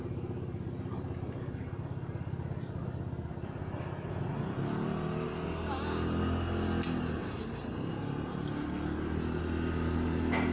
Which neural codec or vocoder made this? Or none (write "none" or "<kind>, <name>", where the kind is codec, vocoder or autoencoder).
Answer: none